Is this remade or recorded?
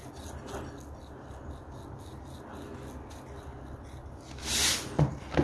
recorded